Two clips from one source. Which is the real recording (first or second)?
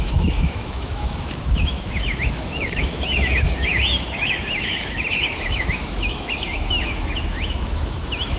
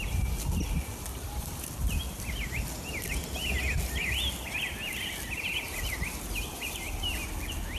second